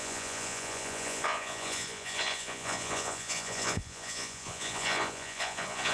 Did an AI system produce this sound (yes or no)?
yes